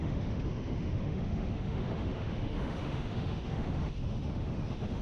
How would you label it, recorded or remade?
remade